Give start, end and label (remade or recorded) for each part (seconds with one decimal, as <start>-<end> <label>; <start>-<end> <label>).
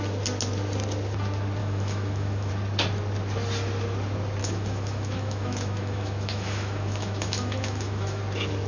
0.0-1.6 recorded; 1.6-2.5 remade; 2.5-4.4 recorded; 4.4-8.2 remade; 8.2-8.7 recorded